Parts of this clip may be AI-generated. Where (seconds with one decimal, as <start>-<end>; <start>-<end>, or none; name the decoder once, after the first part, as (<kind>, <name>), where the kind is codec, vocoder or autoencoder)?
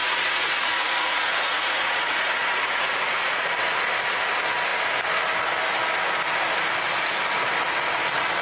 0.0-3.5 (vocoder, Vocos)